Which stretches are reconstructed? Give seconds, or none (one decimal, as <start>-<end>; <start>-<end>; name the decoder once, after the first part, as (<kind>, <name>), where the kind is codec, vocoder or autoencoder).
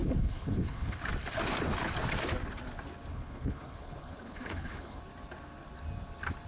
0.0-1.0 (codec, HILCodec); 3.1-5.0